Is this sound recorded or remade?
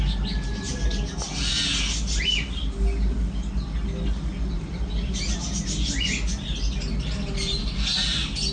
recorded